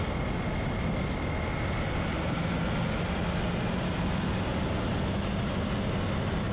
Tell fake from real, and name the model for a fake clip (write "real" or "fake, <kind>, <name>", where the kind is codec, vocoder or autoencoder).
real